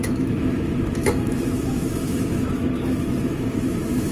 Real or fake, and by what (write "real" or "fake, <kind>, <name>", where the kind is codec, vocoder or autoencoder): fake, autoencoder, DAC-VAE